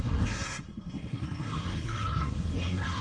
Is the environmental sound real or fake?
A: fake